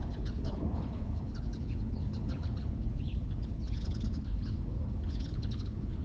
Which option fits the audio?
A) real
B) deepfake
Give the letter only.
B